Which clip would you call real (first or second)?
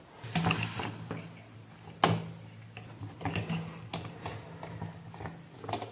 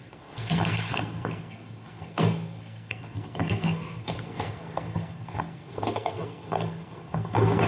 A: first